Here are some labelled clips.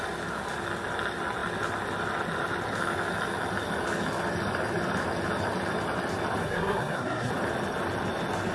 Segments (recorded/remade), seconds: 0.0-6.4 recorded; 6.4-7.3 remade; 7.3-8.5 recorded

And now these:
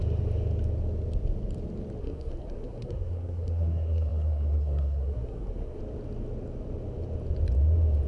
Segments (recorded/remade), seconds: 0.0-2.0 recorded; 2.0-5.8 remade; 5.8-8.1 recorded

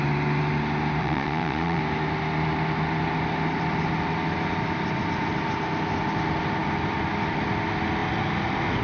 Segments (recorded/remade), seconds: 0.0-1.0 recorded; 1.0-1.8 remade; 1.8-8.8 recorded

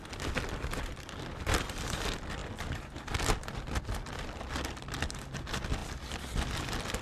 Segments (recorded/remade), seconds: 0.0-7.0 recorded

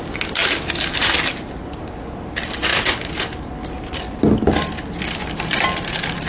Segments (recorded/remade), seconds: 0.0-6.3 recorded

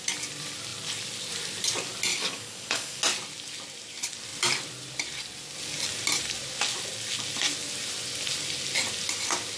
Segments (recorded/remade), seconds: 0.0-2.1 recorded; 2.1-3.0 remade; 3.0-9.6 recorded

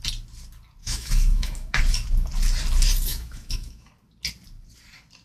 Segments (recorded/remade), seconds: 0.0-0.8 recorded; 0.8-1.8 remade; 1.8-3.1 recorded; 3.1-3.9 remade; 3.9-5.2 recorded

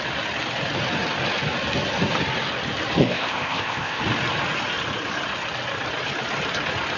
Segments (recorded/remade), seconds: 0.0-3.0 recorded; 3.0-4.0 remade; 4.0-7.0 recorded